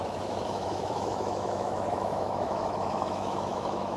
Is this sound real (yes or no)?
no